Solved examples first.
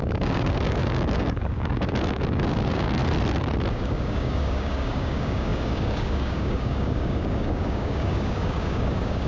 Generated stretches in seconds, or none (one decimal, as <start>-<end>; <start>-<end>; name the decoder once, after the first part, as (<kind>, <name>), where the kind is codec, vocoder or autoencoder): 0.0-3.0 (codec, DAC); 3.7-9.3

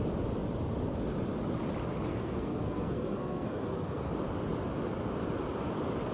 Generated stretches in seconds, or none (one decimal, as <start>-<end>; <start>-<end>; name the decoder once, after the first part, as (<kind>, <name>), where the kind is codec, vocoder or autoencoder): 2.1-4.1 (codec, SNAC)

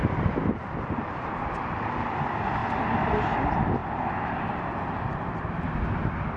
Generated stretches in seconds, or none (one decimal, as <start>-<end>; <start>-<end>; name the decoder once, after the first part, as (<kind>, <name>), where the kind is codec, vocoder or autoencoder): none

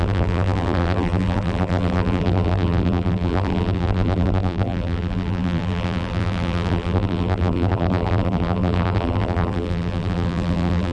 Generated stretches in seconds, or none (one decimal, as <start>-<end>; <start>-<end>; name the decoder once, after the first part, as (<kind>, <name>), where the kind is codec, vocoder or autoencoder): 0.0-10.9 (vocoder, BigVGAN v2)

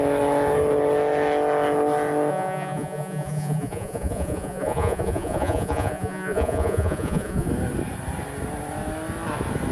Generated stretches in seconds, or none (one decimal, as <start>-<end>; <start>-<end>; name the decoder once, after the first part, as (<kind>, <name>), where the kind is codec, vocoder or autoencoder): 2.3-7.5 (vocoder, Vocos)